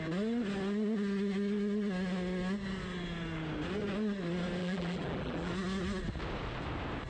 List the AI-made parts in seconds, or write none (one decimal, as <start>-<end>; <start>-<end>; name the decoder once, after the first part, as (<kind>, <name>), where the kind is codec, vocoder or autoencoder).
4.6-5.5 (vocoder, BigVGAN v2)